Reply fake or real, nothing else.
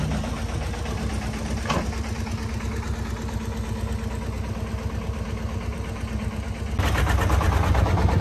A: real